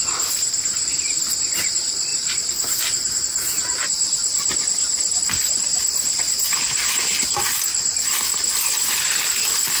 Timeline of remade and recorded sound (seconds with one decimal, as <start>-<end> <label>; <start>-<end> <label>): 0.0-8.3 remade; 8.3-9.2 recorded; 9.2-9.8 remade